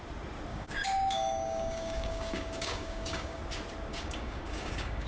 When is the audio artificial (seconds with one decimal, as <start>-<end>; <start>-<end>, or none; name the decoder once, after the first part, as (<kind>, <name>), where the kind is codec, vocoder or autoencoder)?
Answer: 0.5-3.4 (codec, DAC); 3.9-5.1